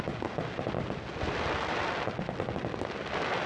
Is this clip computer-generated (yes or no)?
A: no